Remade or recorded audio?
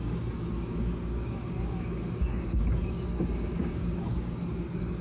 remade